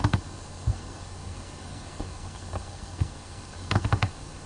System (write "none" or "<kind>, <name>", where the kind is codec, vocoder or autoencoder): codec, SNAC